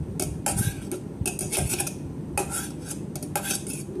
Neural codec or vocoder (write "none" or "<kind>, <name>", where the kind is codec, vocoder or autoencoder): none